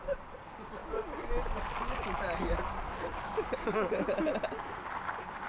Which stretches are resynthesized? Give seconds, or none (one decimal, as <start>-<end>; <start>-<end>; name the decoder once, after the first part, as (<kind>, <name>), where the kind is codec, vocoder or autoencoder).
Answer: none